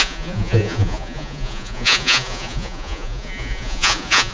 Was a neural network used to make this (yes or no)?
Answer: yes